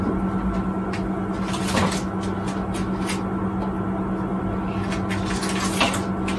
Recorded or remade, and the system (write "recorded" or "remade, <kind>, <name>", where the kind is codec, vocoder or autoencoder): recorded